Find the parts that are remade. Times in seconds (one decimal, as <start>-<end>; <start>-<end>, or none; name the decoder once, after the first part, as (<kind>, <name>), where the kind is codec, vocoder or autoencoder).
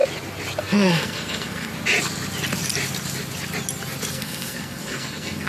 0.6-1.7 (codec, SNAC); 4.1-5.5